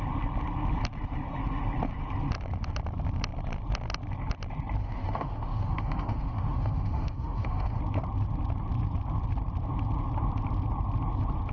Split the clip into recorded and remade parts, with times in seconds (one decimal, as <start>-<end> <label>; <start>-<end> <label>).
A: 0.0-4.8 recorded; 4.8-7.8 remade; 7.8-11.5 recorded